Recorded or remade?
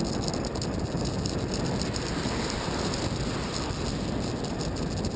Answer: recorded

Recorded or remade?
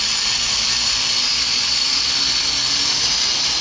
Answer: recorded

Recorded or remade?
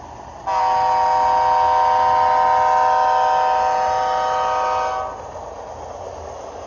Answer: recorded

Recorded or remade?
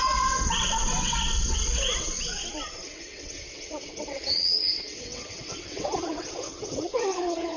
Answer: remade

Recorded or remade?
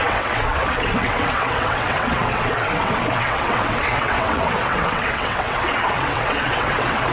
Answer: remade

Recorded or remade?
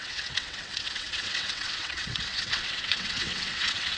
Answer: remade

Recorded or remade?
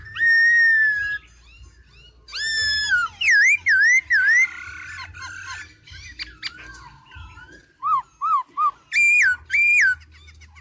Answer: recorded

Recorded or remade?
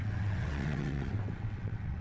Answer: remade